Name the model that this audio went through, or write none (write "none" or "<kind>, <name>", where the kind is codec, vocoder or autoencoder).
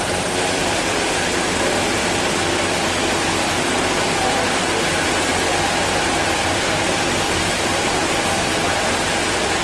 vocoder, BigVGAN v2